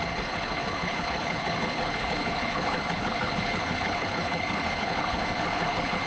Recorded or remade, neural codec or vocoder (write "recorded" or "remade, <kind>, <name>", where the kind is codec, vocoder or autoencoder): remade, codec, HILCodec